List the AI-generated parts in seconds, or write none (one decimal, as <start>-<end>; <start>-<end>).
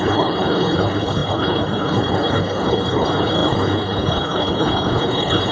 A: 0.0-5.5